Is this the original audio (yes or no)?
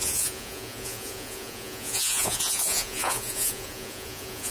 no